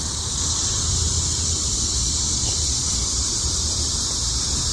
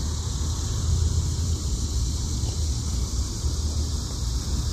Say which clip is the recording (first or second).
second